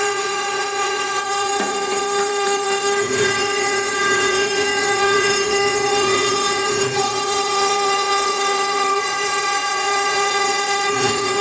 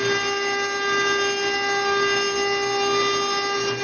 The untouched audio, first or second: second